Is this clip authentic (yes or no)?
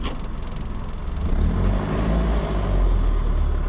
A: yes